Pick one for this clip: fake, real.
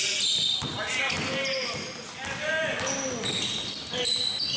real